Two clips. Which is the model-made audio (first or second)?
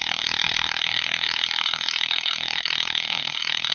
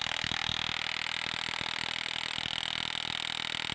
first